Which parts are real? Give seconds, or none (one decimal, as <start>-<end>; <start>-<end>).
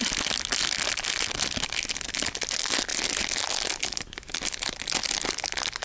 0.0-5.8